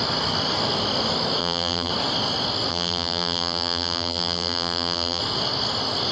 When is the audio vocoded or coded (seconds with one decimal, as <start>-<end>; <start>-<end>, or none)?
1.4-1.9; 2.7-5.2